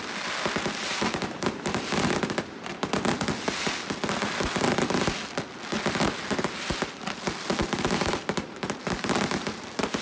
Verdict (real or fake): real